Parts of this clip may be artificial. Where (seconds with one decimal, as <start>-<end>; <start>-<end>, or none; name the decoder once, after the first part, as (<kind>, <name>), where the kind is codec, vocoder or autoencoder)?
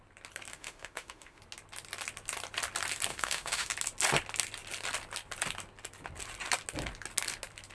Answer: 0.5-1.4 (autoencoder, DAC-VAE); 3.1-3.7